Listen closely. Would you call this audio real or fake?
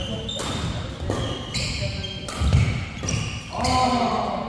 real